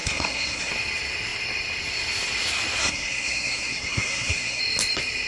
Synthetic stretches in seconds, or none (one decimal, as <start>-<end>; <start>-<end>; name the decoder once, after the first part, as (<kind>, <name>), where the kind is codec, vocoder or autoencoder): 0.0-0.7 (codec, SNAC); 2.8-4.6